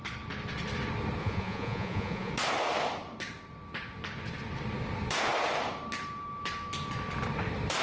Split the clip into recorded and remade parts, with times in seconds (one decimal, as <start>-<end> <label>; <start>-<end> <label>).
0.0-1.2 recorded; 1.2-2.3 remade; 2.3-7.8 recorded